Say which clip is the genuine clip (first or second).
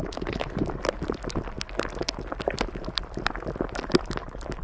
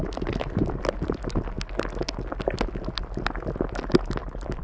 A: second